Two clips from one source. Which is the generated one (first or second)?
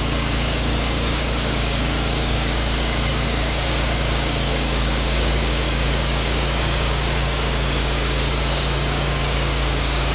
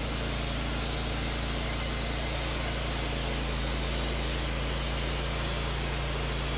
first